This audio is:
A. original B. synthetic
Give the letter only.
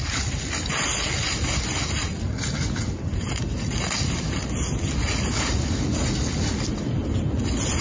A